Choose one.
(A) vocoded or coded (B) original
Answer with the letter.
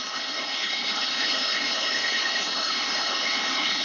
A